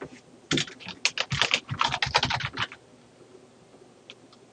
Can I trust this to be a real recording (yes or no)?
yes